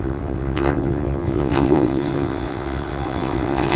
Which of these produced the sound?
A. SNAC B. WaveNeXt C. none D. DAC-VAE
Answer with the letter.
B